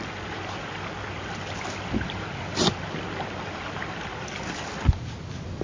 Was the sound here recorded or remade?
recorded